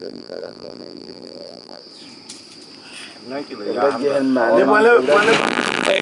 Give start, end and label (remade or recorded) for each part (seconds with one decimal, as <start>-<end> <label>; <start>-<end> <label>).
0.0-1.8 remade; 1.8-5.4 recorded; 5.4-6.0 remade